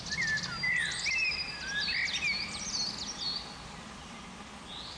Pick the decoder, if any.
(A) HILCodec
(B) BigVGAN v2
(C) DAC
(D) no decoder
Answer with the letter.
D